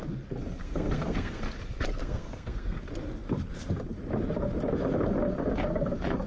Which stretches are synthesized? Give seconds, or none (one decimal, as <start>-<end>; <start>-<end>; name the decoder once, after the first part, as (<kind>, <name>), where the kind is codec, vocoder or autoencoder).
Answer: 0.6-1.4 (codec, SNAC); 2.0-2.8